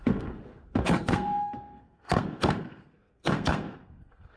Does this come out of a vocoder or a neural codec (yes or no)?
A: yes